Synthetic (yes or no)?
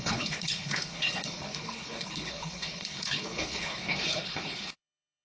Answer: yes